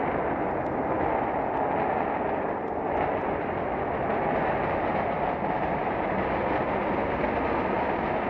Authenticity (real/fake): real